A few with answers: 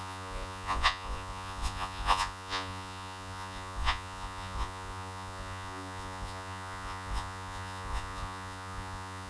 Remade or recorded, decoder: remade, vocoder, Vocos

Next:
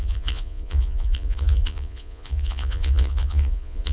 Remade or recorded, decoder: remade, vocoder, Vocos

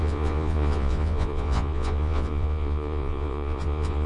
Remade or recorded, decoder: remade, vocoder, Vocos